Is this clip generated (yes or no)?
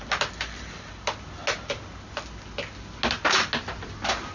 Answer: no